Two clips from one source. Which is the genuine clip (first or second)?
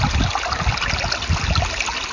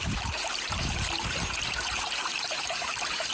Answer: first